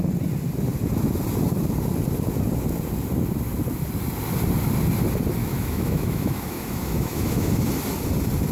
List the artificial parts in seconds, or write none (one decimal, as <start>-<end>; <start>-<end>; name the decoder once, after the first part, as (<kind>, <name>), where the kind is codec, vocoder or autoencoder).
5.4-7.7 (autoencoder, DAC-VAE)